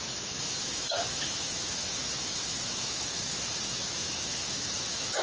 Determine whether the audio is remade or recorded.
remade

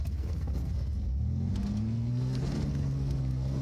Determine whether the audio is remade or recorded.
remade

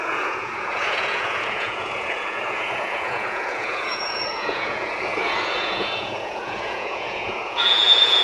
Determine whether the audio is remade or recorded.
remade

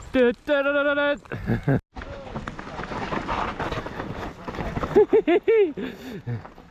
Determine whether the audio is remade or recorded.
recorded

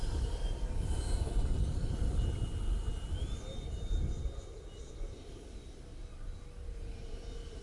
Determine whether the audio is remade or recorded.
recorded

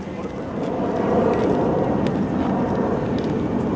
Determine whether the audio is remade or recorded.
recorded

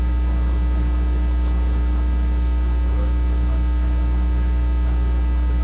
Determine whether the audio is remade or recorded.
recorded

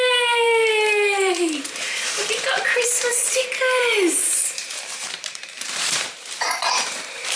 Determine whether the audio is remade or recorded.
remade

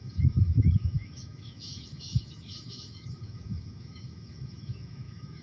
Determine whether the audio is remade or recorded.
remade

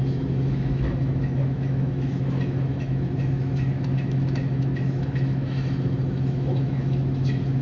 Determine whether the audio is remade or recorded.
remade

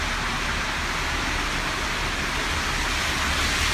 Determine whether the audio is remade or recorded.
recorded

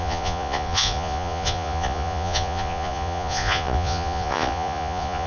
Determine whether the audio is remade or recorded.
remade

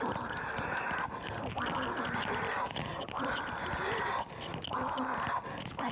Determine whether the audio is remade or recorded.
recorded